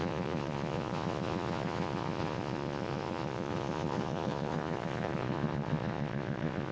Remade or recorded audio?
remade